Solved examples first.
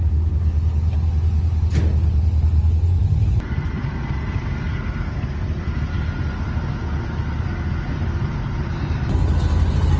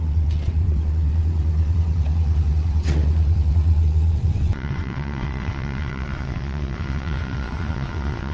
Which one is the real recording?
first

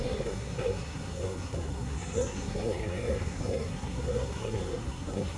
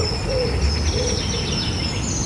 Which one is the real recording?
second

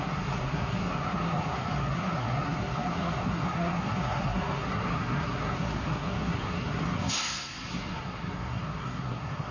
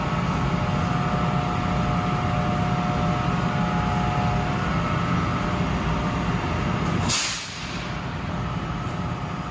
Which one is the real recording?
second